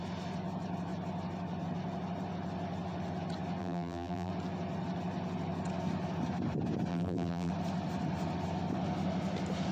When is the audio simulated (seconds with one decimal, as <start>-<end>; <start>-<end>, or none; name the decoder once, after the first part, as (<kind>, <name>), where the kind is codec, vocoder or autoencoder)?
3.6-4.3 (vocoder, BigVGAN v2); 6.9-7.5